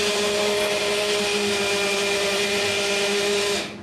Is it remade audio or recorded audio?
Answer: recorded